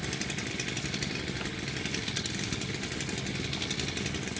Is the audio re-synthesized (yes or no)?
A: no